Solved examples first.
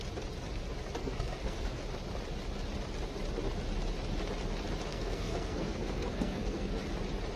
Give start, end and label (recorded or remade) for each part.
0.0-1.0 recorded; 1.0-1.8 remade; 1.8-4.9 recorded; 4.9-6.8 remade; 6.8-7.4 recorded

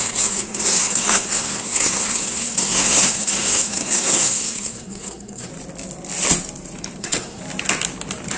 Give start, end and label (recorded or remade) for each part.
0.0-5.5 remade; 5.5-7.0 recorded; 7.0-7.4 remade; 7.4-8.4 recorded

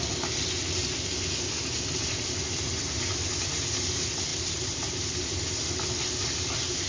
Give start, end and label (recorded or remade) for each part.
0.0-6.9 recorded

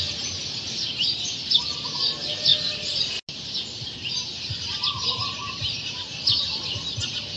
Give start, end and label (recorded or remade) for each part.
0.0-7.4 recorded